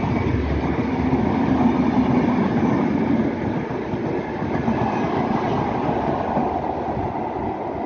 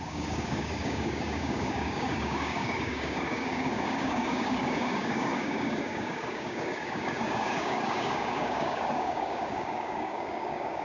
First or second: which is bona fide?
first